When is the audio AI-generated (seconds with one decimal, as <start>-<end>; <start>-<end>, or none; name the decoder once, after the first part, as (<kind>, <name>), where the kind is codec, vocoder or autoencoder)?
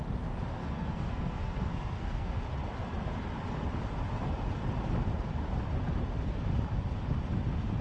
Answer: 0.6-2.4 (codec, SNAC)